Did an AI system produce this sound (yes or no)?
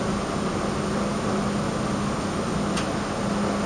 no